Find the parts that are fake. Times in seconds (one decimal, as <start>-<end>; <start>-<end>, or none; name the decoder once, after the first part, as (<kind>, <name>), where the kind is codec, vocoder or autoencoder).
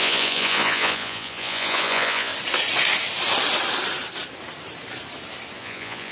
0.0-2.3 (vocoder, Vocos); 5.6-6.1